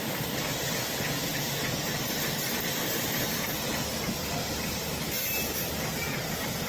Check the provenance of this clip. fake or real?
real